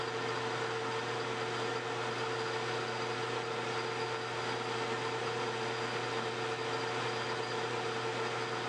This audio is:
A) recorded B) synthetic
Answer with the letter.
A